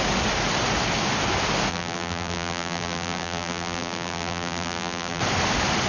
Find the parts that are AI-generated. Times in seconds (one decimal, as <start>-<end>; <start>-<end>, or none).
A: 1.7-5.2